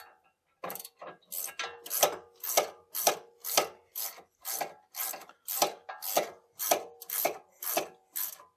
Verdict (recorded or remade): recorded